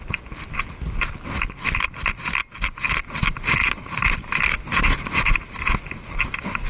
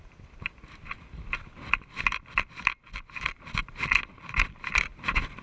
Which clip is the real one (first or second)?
first